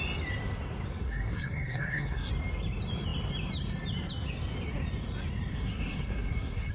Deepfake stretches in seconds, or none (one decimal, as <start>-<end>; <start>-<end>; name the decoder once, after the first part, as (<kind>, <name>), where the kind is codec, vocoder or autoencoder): 1.0-2.3 (codec, SNAC); 5.5-6.7